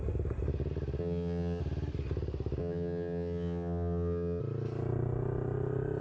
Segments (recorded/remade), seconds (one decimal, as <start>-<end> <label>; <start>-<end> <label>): 0.0-1.0 recorded; 1.0-1.6 remade; 1.6-2.6 recorded; 2.6-4.4 remade; 4.4-6.0 recorded

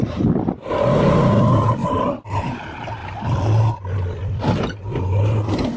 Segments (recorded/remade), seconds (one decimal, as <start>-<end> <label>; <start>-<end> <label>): 0.0-5.8 recorded